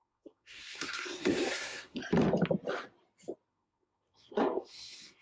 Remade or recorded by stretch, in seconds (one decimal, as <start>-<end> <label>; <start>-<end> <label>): 0.0-2.0 remade; 2.0-3.5 recorded; 3.5-5.2 remade